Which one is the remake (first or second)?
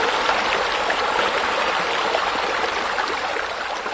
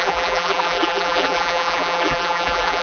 second